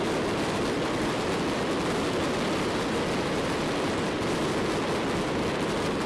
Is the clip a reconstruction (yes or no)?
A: no